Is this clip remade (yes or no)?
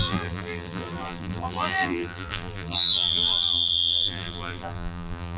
yes